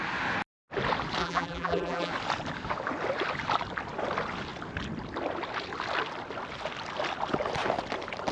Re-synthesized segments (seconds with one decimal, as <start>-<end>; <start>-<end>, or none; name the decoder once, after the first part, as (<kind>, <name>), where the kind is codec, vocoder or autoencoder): 1.2-2.1 (vocoder, BigVGAN v2)